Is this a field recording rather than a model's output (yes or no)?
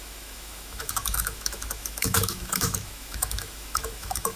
no